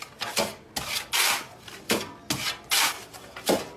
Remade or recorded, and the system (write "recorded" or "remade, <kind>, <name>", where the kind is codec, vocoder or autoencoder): recorded